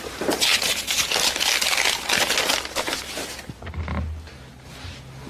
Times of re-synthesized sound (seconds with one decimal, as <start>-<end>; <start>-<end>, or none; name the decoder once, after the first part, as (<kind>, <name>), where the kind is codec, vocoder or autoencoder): none